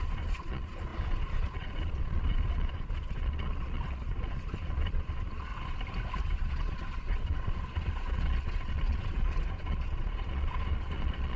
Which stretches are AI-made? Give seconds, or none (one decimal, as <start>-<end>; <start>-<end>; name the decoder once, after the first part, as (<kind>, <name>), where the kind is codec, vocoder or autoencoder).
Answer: 0.0-5.5 (vocoder, Vocos); 6.2-11.4